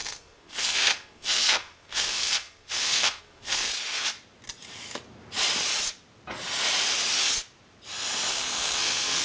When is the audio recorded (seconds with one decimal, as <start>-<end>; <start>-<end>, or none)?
3.7-8.3